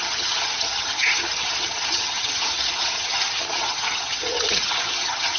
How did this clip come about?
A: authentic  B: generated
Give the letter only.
B